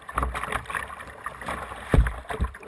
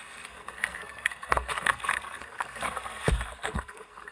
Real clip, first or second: first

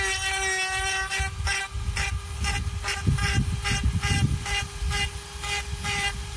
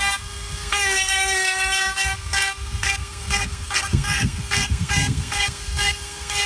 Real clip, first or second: first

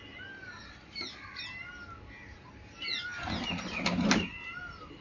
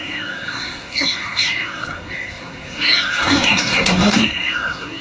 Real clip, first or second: first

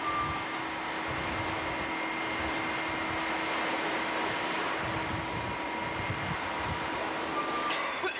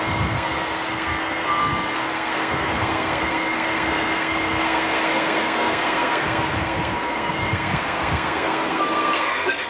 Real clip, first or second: first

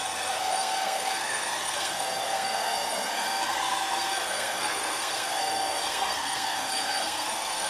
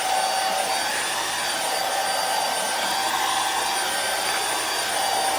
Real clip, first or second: second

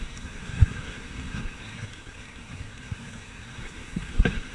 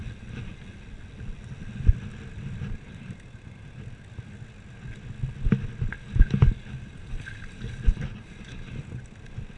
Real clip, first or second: second